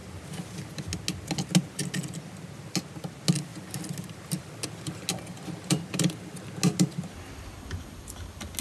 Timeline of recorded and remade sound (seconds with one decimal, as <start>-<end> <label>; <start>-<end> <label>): 0.0-8.6 recorded